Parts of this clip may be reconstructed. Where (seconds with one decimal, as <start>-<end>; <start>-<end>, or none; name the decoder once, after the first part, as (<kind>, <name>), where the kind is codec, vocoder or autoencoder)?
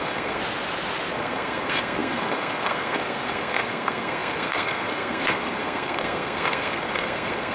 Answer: 0.0-0.4 (codec, SNAC); 1.1-7.5